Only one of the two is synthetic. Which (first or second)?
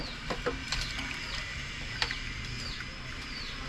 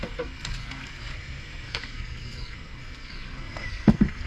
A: second